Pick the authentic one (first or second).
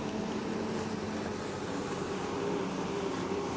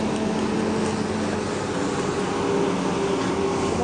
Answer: second